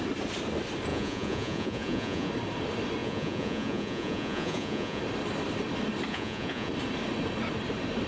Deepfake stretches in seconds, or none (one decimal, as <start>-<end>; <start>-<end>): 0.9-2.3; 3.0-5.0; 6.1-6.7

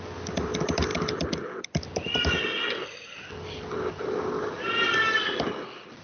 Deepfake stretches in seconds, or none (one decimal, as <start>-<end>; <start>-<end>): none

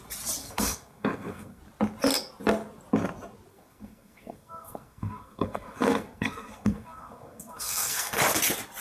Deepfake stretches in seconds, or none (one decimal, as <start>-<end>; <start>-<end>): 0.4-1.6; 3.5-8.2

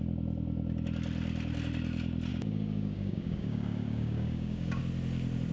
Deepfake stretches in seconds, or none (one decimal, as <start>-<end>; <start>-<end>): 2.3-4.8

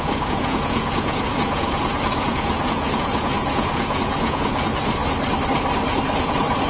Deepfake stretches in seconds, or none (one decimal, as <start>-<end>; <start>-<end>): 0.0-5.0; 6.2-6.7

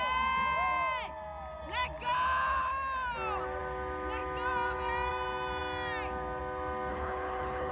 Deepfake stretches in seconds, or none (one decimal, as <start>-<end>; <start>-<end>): 6.9-7.7

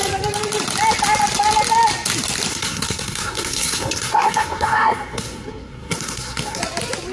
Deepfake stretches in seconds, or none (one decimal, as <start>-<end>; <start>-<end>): 2.5-6.6

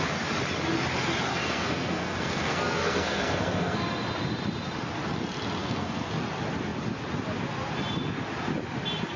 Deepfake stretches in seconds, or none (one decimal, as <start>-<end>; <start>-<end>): 1.3-3.8; 5.6-6.1